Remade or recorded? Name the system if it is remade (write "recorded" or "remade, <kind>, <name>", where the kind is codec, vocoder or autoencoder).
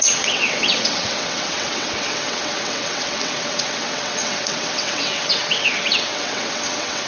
remade, vocoder, WaveNeXt